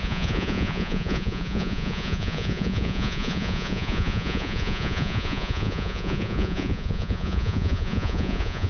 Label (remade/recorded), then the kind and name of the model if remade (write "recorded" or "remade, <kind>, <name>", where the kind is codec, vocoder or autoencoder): remade, vocoder, Vocos